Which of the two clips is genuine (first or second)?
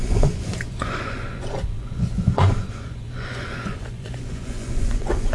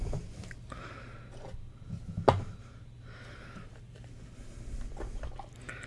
second